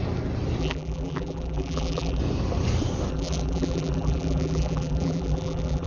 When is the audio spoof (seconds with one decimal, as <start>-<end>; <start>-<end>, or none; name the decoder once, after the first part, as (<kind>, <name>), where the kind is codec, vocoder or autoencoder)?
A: 0.6-2.2 (vocoder, BigVGAN v2); 3.1-5.9